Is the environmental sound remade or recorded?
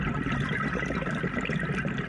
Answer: recorded